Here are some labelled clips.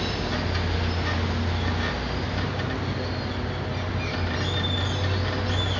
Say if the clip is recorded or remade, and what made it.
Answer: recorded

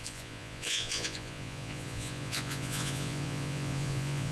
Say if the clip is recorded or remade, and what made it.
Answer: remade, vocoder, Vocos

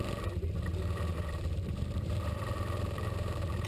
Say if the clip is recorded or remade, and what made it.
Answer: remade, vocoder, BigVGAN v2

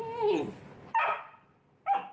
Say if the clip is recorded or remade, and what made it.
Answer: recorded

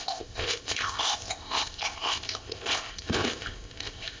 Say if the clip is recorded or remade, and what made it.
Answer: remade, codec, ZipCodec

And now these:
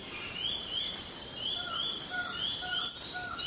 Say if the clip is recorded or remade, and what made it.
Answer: remade, vocoder, BigVGAN v2